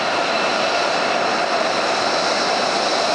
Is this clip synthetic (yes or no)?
yes